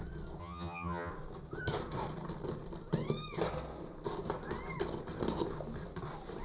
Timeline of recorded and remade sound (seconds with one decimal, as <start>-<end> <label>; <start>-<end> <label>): 0.0-0.4 recorded; 0.4-1.1 remade; 1.1-6.4 recorded